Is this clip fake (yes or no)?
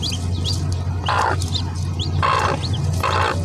no